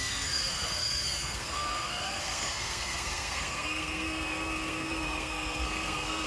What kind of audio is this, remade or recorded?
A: remade